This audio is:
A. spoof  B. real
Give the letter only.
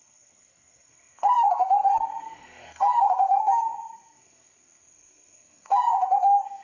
A